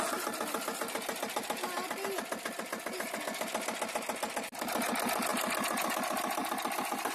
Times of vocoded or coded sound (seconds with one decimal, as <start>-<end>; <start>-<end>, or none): none